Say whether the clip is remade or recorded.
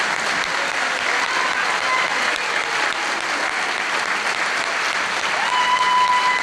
recorded